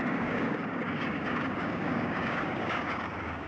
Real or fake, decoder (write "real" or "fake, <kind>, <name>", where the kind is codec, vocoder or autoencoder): fake, codec, DAC